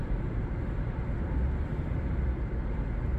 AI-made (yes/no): no